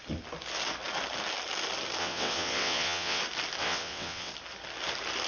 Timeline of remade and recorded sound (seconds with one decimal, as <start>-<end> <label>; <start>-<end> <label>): 0.0-2.0 recorded; 2.0-3.2 remade; 3.2-3.6 recorded; 3.6-4.3 remade; 4.3-5.3 recorded